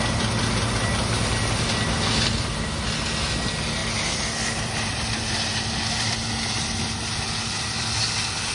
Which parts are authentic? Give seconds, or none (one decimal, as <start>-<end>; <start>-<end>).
0.0-8.5